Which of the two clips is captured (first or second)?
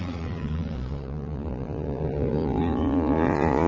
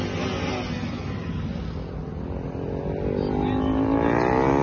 second